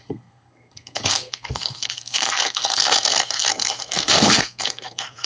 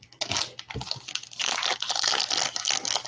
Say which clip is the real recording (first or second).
second